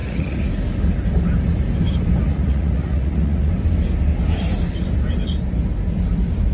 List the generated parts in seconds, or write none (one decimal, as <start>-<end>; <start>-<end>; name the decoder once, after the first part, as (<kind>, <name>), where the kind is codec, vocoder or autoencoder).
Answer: 0.0-0.5 (vocoder, Vocos); 2.2-3.5